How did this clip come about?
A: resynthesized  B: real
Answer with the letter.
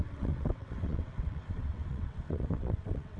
A